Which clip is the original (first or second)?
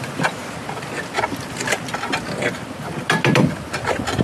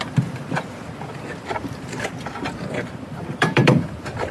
first